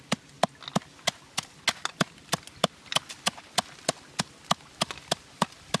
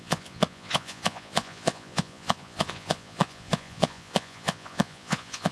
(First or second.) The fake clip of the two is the second